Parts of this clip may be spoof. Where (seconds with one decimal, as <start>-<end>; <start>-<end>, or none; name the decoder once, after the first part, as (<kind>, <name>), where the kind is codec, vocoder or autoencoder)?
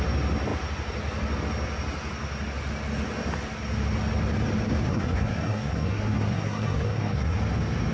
4.9-7.4 (codec, SNAC)